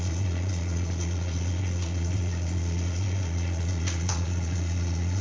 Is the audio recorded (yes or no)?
no